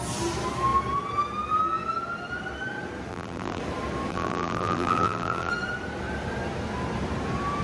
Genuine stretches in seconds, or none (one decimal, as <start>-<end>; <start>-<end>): 0.0-3.1; 3.6-4.1; 5.5-7.6